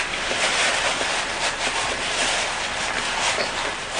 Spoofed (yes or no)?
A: no